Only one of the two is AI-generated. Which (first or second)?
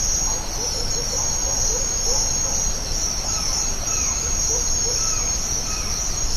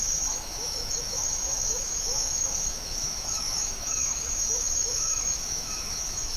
second